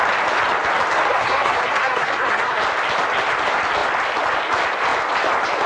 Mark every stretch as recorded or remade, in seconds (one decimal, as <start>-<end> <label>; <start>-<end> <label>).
0.0-1.1 recorded; 1.1-2.6 remade; 2.6-5.7 recorded